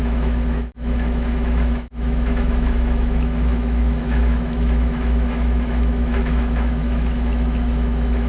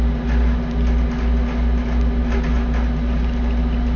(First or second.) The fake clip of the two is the first